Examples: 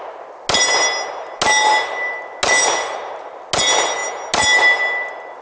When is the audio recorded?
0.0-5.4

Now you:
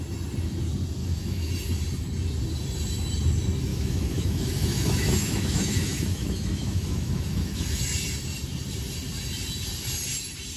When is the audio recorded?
0.0-1.0; 1.5-3.7; 7.8-10.6

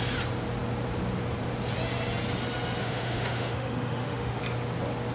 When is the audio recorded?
0.0-2.8; 4.4-5.1

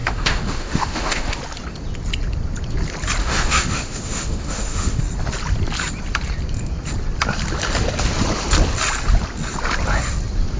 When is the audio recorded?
1.4-3.2; 5.0-10.6

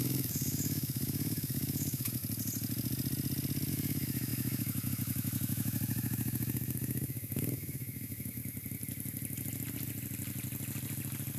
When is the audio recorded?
2.2-3.7; 8.4-11.4

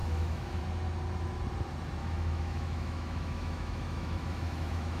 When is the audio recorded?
0.6-2.0

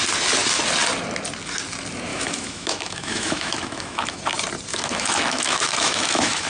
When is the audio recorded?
0.0-2.1; 4.2-4.7

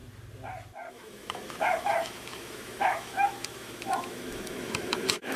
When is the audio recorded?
0.0-0.9